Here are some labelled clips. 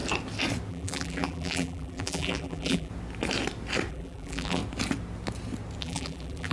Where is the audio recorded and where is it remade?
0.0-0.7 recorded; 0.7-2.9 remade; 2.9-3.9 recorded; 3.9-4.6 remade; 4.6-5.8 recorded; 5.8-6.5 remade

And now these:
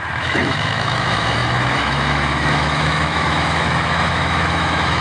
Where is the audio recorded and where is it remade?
0.0-5.0 remade

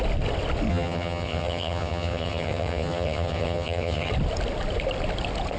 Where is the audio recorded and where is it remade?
0.0-0.7 recorded; 0.7-4.1 remade; 4.1-5.6 recorded

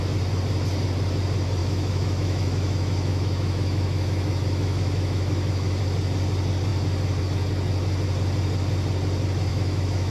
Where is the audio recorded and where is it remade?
0.0-1.6 recorded; 1.6-5.8 remade; 5.8-9.5 recorded; 9.5-10.1 remade

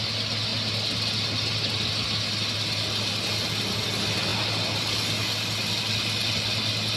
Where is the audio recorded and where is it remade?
0.0-7.0 recorded